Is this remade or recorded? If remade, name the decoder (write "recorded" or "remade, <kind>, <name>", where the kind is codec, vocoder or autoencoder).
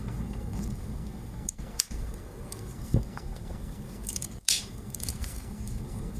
remade, codec, SNAC